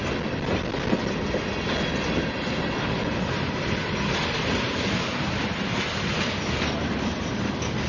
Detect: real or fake real